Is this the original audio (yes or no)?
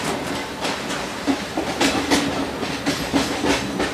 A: yes